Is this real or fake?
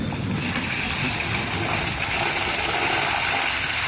real